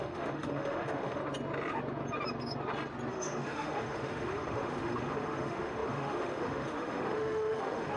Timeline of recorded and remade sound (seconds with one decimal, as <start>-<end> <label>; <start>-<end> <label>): 0.0-1.2 remade; 1.2-3.1 recorded; 3.1-8.0 remade

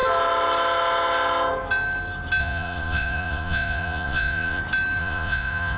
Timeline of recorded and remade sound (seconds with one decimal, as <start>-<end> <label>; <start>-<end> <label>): 0.0-2.4 recorded; 2.4-4.6 remade; 4.6-5.0 recorded; 5.0-5.8 remade

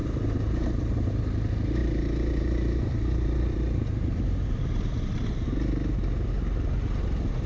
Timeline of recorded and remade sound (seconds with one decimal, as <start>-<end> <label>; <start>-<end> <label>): 0.0-1.2 remade; 1.2-1.8 recorded; 1.8-5.3 remade; 5.3-7.5 recorded

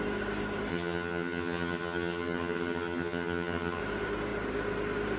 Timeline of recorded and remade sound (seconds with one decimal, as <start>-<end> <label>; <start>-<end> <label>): 0.0-0.7 recorded; 0.7-3.8 remade; 3.8-5.2 recorded

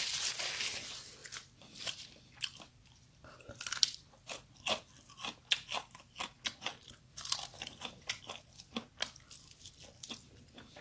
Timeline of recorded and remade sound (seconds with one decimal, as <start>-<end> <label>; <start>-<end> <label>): 0.0-1.2 recorded; 1.2-4.5 remade; 4.5-7.1 recorded; 7.1-8.1 remade; 8.1-10.8 recorded

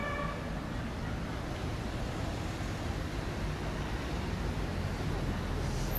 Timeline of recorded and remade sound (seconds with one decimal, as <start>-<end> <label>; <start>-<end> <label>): 0.0-6.0 recorded

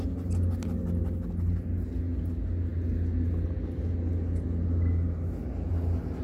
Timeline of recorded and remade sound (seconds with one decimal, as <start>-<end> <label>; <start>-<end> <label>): 0.0-6.2 recorded